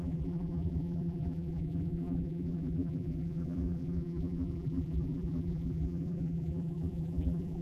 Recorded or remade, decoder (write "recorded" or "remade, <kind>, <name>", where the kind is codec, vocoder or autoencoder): remade, vocoder, BigVGAN v2